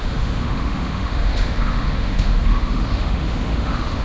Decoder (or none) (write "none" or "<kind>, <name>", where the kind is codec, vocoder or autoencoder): autoencoder, DAC-VAE